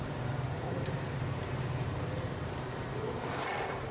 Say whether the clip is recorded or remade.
remade